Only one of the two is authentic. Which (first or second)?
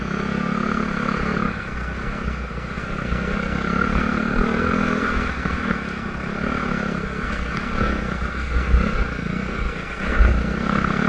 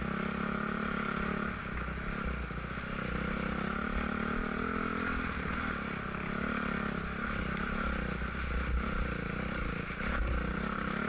second